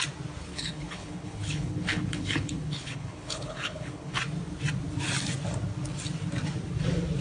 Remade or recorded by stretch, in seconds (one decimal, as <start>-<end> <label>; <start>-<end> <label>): 0.0-0.5 recorded; 0.5-4.2 remade; 4.2-7.2 recorded